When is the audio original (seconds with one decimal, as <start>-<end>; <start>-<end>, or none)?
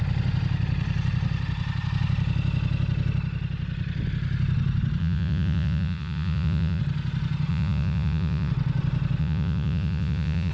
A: 0.0-5.0; 6.8-7.5; 8.5-9.2